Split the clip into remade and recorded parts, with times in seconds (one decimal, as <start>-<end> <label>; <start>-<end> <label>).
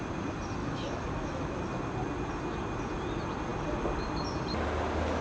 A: 0.0-0.6 recorded; 0.6-1.6 remade; 1.6-5.2 recorded